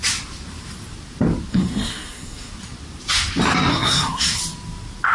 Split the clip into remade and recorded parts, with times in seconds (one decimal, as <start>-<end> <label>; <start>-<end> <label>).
0.0-1.5 recorded; 1.5-2.5 remade; 2.5-3.7 recorded; 3.7-4.4 remade; 4.4-5.1 recorded